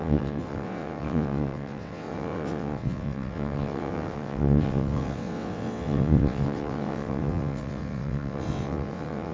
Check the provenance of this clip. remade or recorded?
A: remade